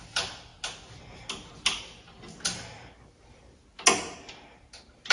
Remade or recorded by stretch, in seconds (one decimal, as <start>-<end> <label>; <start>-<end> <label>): 0.0-0.5 remade; 0.5-3.0 recorded; 3.0-3.6 remade; 3.6-5.1 recorded